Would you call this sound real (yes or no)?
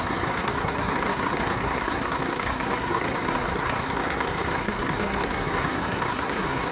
no